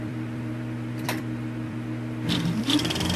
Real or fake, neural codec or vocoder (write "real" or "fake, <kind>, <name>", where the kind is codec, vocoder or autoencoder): fake, vocoder, BigVGAN v2